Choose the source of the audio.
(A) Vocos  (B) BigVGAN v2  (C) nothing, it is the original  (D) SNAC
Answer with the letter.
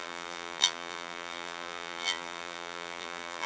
B